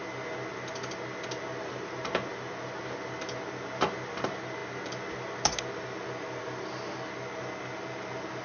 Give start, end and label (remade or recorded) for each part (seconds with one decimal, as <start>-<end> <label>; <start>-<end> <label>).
0.0-8.4 recorded